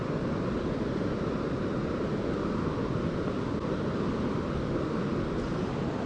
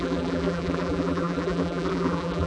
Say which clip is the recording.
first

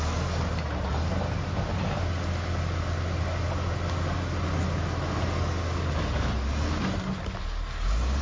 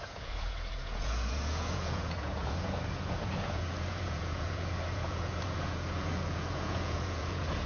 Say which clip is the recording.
first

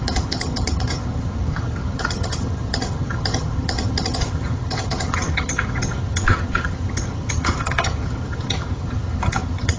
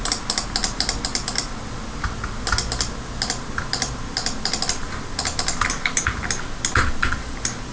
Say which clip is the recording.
second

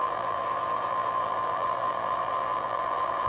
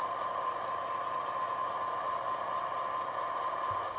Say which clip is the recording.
second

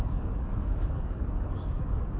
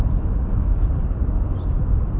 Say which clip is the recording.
second